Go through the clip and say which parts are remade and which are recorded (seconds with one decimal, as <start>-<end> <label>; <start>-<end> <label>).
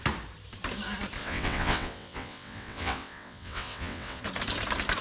0.0-1.2 recorded; 1.2-4.2 remade; 4.2-5.0 recorded